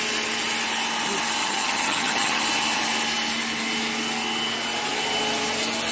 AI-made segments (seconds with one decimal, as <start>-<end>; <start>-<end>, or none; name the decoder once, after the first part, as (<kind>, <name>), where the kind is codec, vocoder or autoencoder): 1.4-2.4 (vocoder, HiFi-GAN)